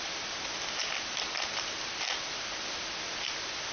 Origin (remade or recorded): recorded